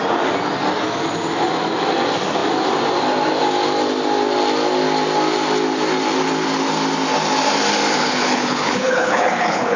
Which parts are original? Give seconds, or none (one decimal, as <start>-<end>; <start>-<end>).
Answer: 0.0-8.0